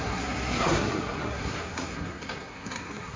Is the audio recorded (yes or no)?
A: no